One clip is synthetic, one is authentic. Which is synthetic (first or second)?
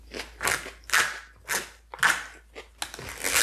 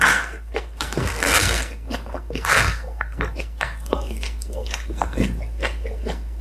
second